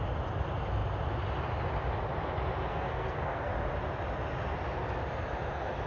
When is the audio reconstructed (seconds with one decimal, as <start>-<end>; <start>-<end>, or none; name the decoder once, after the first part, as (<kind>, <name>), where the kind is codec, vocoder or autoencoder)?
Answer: 2.7-3.5 (codec, SNAC)